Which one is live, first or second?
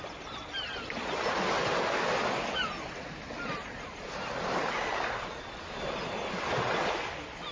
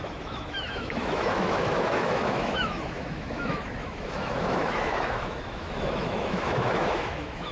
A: first